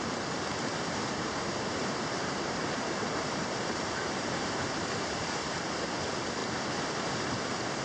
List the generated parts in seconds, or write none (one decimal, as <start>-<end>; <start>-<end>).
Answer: 0.7-5.2; 6.4-7.8